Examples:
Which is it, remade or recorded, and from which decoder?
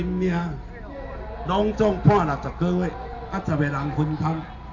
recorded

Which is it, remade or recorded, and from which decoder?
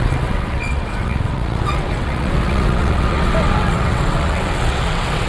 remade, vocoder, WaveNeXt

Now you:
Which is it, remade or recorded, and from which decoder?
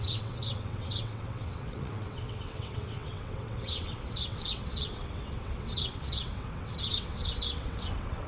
remade, vocoder, WaveNeXt